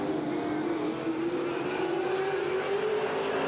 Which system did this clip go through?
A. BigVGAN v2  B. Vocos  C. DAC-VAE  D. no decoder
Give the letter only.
D